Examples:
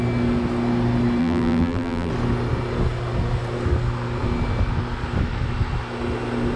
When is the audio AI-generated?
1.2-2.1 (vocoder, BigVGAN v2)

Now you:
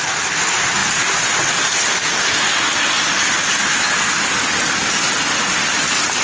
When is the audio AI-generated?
none

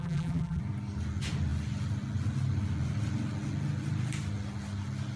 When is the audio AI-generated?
0.0-0.6 (vocoder, BigVGAN v2)